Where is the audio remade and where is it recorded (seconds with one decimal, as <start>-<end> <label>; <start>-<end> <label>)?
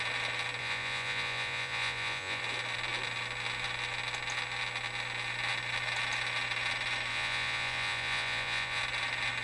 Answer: 0.0-0.6 recorded; 0.6-2.4 remade; 2.4-7.1 recorded; 7.1-8.8 remade; 8.8-9.4 recorded